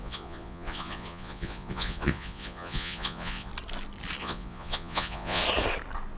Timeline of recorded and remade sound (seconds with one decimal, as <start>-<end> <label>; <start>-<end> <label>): 0.0-3.5 remade; 3.5-4.2 recorded; 4.2-5.4 remade; 5.4-6.2 recorded